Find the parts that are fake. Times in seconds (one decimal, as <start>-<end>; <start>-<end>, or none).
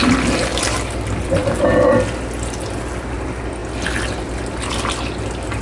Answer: none